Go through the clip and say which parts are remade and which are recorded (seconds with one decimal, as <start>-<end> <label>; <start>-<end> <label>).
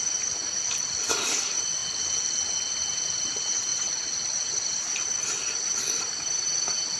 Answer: 0.0-0.4 remade; 0.4-1.1 recorded; 1.1-1.8 remade; 1.8-3.2 recorded; 3.2-7.0 remade